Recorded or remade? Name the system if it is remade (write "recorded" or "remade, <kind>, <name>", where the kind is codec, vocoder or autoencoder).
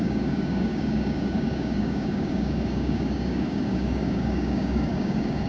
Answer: remade, codec, DAC